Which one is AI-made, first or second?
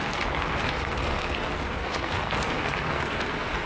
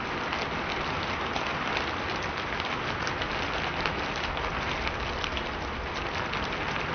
first